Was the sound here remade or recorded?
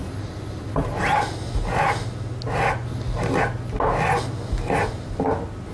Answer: recorded